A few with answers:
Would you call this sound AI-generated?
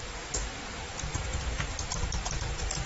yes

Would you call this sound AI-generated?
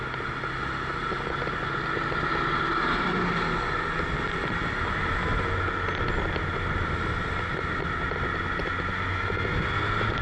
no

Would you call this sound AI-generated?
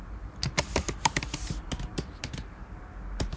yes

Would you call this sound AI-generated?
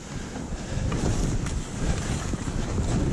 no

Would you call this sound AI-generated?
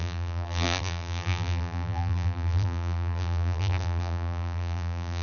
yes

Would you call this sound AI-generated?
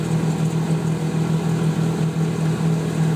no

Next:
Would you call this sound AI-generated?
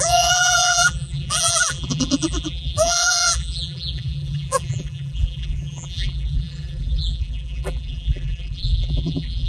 yes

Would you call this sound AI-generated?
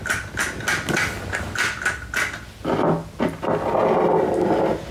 no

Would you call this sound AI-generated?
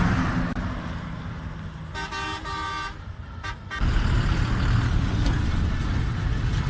no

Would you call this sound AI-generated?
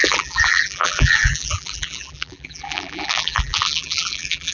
yes